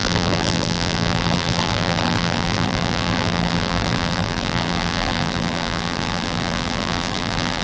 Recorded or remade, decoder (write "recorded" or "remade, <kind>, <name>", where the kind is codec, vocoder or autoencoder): remade, vocoder, BigVGAN v2